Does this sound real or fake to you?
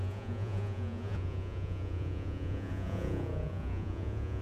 fake